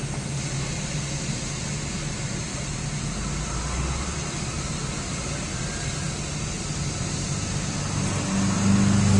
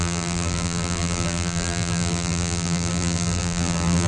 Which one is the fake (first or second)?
second